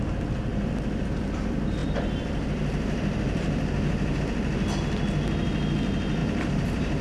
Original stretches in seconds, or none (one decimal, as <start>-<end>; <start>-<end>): 0.0-1.8; 4.2-6.2